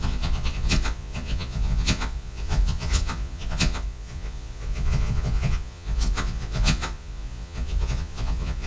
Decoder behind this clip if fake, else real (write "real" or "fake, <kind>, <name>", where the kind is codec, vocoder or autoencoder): fake, vocoder, Vocos